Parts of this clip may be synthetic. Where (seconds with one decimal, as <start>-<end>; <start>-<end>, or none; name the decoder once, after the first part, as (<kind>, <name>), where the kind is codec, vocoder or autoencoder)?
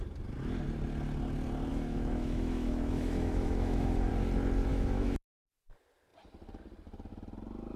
1.7-4.1 (autoencoder, DAC-VAE); 4.7-5.4